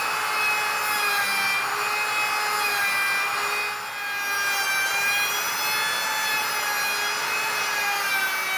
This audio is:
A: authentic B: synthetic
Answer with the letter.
A